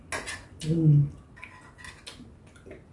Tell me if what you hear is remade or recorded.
recorded